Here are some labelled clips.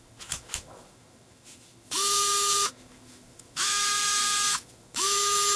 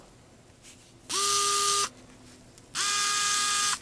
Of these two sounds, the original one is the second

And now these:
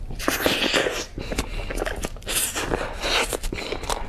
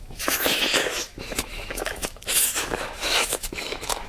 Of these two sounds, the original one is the first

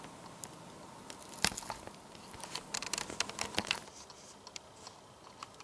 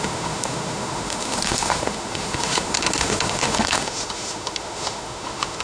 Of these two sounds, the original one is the first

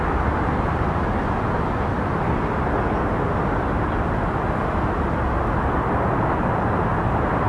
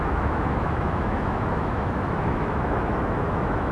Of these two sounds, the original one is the first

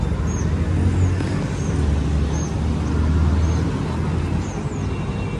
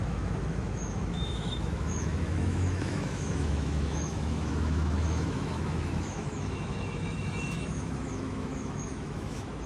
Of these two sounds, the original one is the first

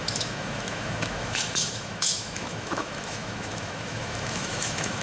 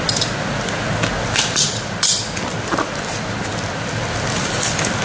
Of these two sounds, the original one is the second